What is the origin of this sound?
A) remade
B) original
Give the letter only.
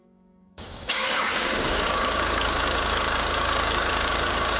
A